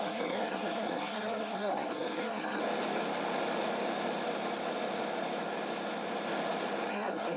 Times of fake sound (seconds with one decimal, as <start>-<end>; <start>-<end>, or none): 0.0-2.6; 6.9-7.4